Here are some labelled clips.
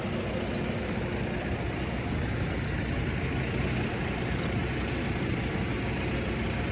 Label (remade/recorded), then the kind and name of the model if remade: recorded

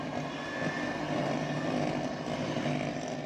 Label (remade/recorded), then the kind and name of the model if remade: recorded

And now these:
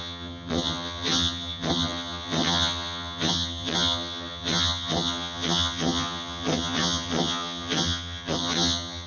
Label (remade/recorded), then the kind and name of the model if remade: remade, vocoder, HiFi-GAN